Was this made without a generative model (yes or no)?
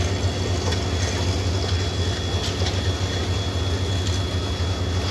yes